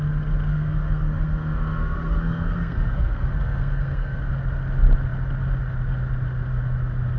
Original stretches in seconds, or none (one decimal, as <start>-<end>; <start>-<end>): 0.0-0.5; 4.3-7.2